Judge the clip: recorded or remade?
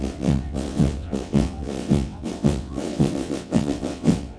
remade